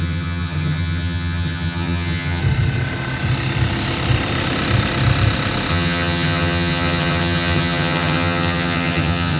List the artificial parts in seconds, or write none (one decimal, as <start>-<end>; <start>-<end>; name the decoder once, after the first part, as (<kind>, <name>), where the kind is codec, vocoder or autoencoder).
0.0-2.4 (vocoder, HiFi-GAN); 5.7-9.4